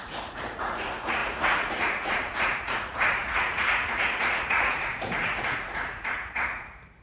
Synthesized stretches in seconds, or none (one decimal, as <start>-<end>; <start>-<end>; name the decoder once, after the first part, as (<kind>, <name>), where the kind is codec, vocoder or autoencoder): 0.0-7.0 (vocoder, Vocos)